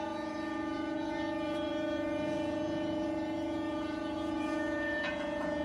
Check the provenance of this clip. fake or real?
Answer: fake